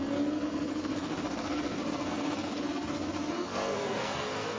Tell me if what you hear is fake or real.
fake